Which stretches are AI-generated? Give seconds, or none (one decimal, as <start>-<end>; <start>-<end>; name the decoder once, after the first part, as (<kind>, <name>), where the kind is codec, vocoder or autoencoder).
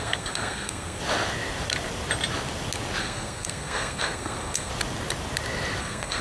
0.0-1.0 (codec, SNAC); 3.0-4.7; 5.8-6.2